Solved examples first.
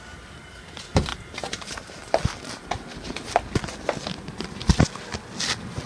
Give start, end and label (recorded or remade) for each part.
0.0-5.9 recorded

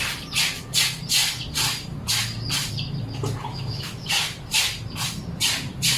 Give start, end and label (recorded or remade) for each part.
0.0-3.5 recorded; 3.5-4.1 remade; 4.1-6.0 recorded

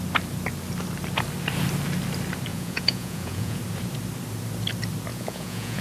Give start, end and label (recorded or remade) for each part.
0.0-2.5 recorded; 2.5-3.6 remade; 3.6-5.1 recorded; 5.1-5.8 remade

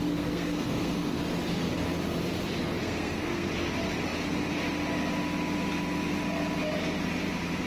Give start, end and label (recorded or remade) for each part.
0.0-1.2 remade; 1.2-2.8 recorded; 2.8-3.5 remade; 3.5-7.7 recorded

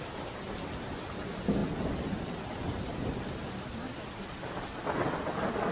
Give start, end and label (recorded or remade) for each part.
0.0-5.7 recorded

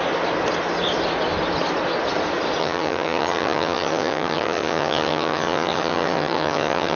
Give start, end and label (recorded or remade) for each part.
0.0-2.6 recorded; 2.6-7.0 remade